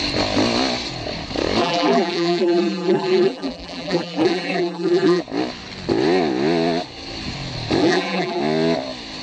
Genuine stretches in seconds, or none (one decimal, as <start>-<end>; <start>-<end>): 0.0-1.6; 5.2-7.8; 8.4-9.2